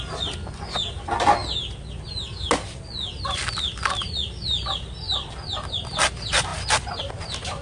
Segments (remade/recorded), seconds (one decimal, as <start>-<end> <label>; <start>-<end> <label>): 0.0-7.6 recorded